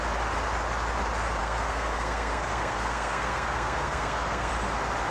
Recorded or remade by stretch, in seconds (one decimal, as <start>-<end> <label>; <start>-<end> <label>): 0.0-1.4 recorded; 1.4-4.5 remade; 4.5-5.1 recorded